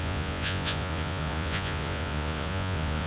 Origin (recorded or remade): remade